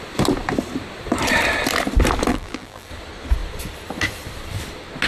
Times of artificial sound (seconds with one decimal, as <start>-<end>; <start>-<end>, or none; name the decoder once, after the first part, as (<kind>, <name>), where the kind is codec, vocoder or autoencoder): 2.3-2.9 (vocoder, BigVGAN v2)